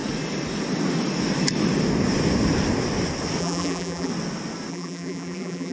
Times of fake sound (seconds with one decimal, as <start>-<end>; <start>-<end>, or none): 3.4-4.1; 4.7-5.7